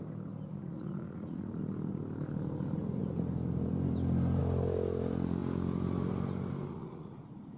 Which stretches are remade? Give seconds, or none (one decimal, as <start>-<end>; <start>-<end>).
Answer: 0.5-1.6; 6.7-7.6